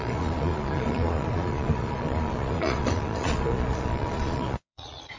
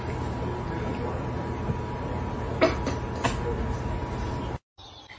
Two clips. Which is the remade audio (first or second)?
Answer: first